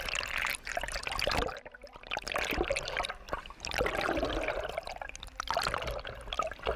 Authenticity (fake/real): real